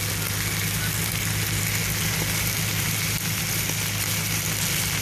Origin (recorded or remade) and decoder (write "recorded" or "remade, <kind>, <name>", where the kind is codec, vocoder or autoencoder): recorded